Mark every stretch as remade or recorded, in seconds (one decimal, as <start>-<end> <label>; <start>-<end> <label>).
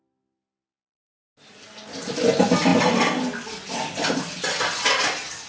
0.0-5.5 recorded